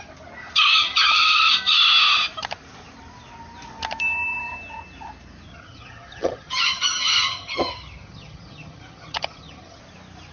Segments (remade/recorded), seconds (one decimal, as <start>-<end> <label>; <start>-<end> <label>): 0.0-0.8 recorded; 0.8-1.5 remade; 1.5-5.5 recorded; 5.5-9.8 remade; 9.8-10.3 recorded